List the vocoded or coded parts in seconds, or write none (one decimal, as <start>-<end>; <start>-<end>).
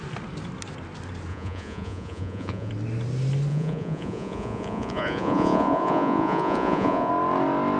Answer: 1.3-2.7; 3.5-7.1